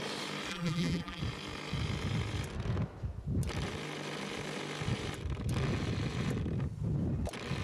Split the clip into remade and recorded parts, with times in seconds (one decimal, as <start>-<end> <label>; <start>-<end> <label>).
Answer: 0.0-0.5 recorded; 0.5-1.2 remade; 1.2-7.6 recorded